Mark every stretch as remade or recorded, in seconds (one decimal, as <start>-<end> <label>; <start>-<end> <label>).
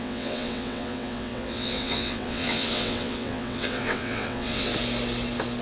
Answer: 0.0-4.7 remade; 4.7-5.6 recorded